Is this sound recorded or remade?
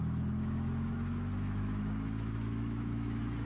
remade